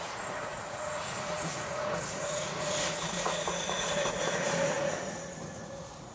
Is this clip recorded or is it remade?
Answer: remade